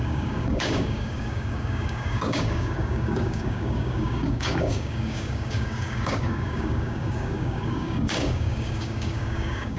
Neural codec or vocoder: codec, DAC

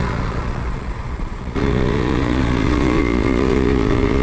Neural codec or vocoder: vocoder, Vocos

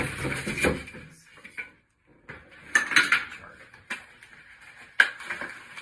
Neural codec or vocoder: none